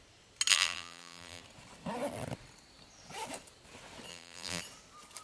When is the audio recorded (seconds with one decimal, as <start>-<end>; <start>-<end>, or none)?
0.0-0.5; 1.4-4.1; 4.6-5.2